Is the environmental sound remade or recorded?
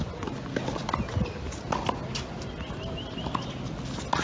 recorded